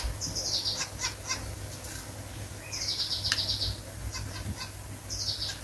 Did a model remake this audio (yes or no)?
no